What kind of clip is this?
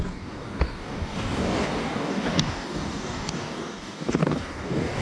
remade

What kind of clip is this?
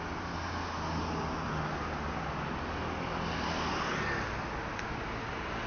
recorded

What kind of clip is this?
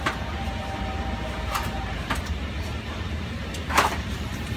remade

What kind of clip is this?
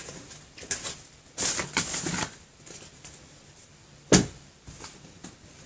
recorded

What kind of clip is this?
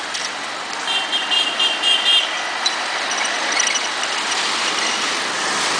recorded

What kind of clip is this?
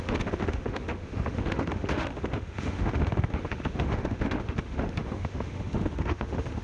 remade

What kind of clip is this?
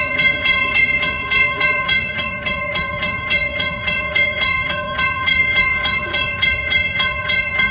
remade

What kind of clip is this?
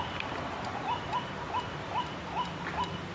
recorded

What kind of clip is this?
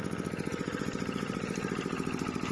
recorded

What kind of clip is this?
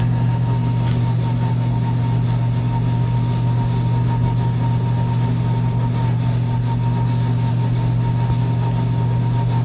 recorded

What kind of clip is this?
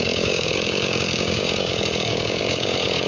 remade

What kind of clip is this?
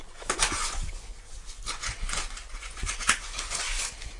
remade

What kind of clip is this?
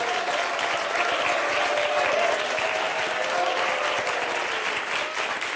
recorded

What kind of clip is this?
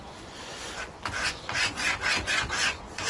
remade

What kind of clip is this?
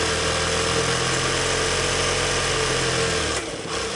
recorded